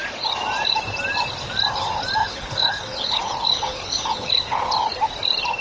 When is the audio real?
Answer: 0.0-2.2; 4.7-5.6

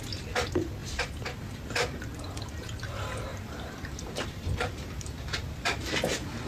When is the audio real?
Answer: 0.0-3.3; 5.9-6.5

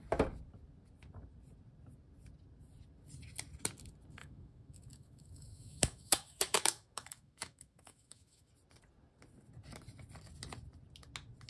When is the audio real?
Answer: 0.0-4.2; 8.5-11.5

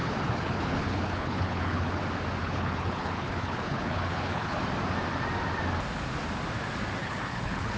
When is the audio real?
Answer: 2.0-2.4; 4.6-7.0

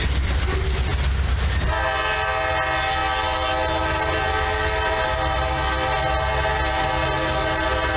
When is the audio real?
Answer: 0.0-8.0

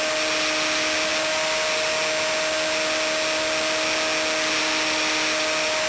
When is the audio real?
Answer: 0.0-5.9

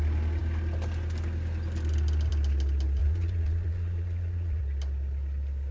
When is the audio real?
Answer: 0.0-3.0; 4.6-5.7